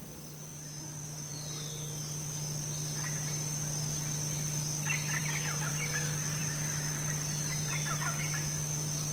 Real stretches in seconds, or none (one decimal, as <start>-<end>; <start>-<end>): 0.0-0.5; 1.3-5.2; 5.7-6.4; 7.7-9.1